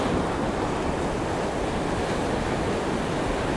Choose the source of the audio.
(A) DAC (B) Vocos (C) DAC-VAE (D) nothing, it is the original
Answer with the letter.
D